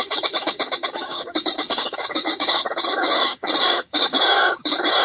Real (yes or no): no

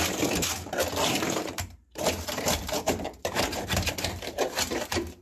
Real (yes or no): no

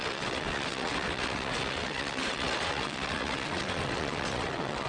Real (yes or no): no